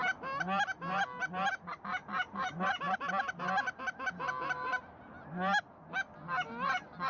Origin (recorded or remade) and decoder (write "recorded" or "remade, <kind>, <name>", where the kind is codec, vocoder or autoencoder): recorded